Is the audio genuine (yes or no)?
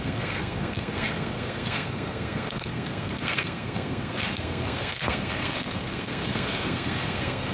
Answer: no